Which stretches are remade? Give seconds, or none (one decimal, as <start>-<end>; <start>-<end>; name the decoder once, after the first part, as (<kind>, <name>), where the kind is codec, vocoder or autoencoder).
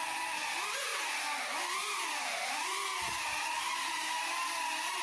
0.9-1.4 (vocoder, BigVGAN v2); 1.8-5.0